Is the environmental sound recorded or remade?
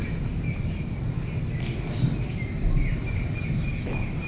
recorded